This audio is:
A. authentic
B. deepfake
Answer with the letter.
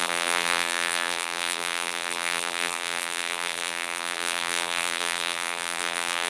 B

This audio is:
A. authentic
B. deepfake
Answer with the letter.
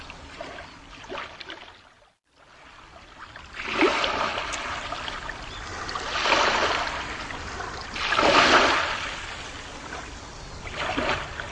A